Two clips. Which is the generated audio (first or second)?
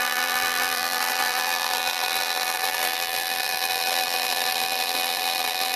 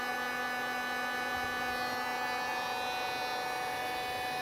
first